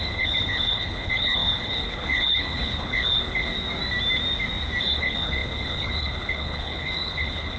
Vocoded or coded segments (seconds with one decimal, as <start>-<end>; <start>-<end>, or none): 0.0-3.5; 4.8-7.6